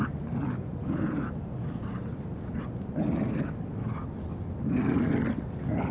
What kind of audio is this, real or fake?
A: real